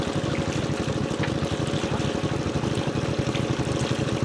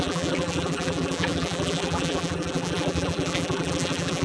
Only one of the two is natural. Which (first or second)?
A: first